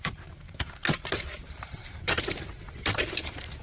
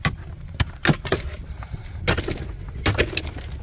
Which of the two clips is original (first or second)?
second